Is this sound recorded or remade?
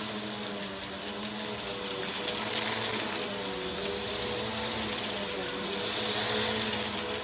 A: recorded